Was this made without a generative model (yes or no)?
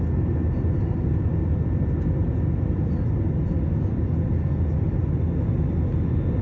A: yes